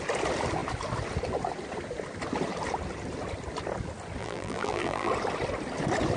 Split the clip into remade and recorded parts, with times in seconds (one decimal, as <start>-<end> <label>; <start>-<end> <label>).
0.0-4.2 recorded; 4.2-5.1 remade; 5.1-6.2 recorded